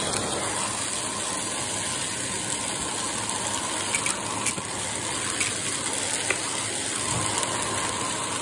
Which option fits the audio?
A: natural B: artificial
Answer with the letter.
A